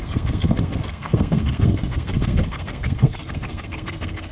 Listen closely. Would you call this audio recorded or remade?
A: remade